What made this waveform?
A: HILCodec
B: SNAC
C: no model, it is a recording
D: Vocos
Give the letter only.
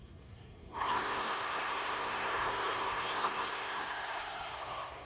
B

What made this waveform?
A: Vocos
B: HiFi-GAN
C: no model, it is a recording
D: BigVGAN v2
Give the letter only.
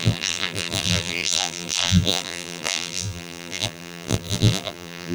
D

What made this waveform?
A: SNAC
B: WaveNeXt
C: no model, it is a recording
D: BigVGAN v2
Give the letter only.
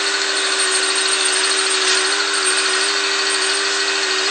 C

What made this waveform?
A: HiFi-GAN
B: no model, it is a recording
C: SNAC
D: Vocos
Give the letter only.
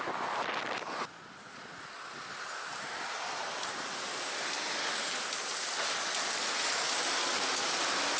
B